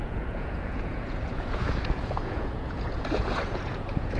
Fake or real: fake